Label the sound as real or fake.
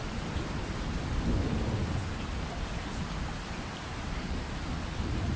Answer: real